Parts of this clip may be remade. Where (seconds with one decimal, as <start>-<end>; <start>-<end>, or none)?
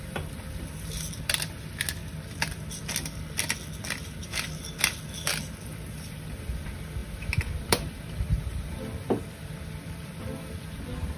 7.0-9.2